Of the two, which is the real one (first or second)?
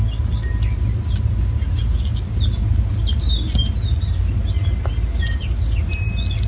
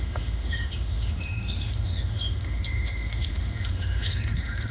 first